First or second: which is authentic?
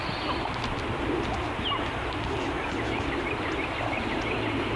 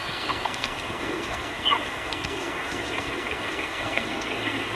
first